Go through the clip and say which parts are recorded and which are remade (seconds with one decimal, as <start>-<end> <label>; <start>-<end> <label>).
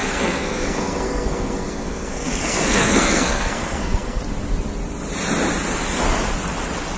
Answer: 0.0-4.2 remade; 4.2-7.0 recorded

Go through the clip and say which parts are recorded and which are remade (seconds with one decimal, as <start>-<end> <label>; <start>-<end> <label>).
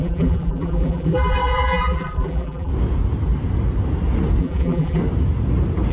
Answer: 0.0-2.7 remade; 2.7-4.4 recorded; 4.4-5.0 remade; 5.0-5.9 recorded